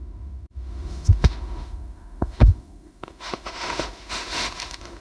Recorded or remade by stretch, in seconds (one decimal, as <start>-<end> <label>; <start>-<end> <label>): 0.0-5.0 remade